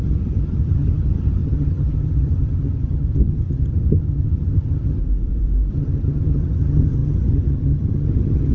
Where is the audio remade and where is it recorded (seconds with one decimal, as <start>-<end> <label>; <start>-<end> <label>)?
0.0-5.0 remade; 5.0-5.7 recorded; 5.7-8.5 remade